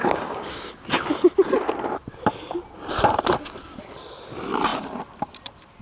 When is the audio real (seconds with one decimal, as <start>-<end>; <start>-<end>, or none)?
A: 0.7-5.8